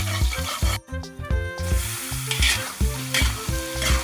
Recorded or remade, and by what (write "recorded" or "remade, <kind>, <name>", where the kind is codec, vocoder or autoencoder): recorded